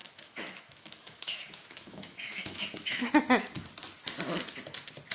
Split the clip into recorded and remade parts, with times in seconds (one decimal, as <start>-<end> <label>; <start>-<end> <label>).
0.0-3.1 remade; 3.1-5.1 recorded